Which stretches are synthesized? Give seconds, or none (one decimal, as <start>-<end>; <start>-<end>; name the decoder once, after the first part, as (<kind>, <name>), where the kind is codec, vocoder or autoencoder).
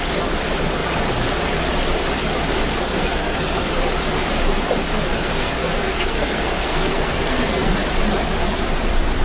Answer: 2.9-3.7 (codec, SNAC); 5.1-7.7